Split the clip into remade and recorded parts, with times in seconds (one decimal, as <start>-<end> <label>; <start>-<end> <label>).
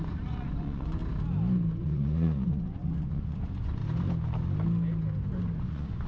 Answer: 0.0-1.0 remade; 1.0-1.8 recorded; 1.8-3.8 remade; 3.8-5.6 recorded; 5.6-6.1 remade